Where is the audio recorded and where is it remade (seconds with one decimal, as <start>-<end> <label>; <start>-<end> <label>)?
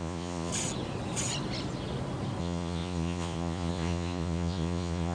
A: 0.0-0.5 remade; 0.5-2.4 recorded; 2.4-5.1 remade